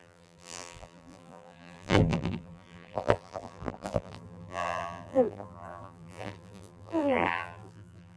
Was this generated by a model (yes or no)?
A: yes